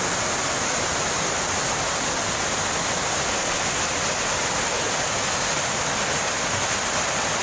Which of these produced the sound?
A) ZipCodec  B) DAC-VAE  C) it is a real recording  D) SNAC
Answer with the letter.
C